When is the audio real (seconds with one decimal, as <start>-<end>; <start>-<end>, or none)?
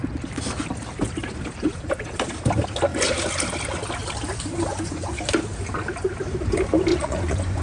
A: 0.0-4.7; 5.2-6.9